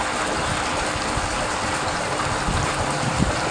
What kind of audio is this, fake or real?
real